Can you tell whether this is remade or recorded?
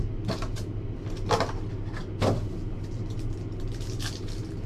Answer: recorded